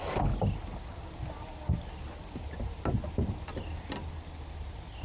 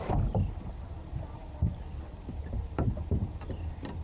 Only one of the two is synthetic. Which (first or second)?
second